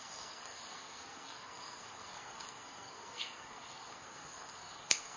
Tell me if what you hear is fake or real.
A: fake